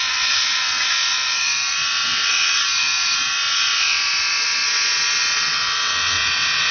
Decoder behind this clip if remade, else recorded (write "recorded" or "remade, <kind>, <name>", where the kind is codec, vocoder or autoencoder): remade, vocoder, WaveNeXt